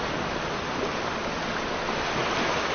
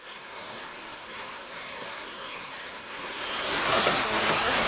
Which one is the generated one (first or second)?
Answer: second